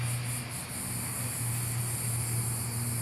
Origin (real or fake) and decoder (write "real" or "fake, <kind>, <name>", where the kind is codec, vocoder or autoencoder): real